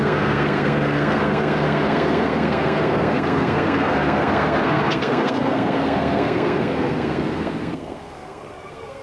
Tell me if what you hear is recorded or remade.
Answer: remade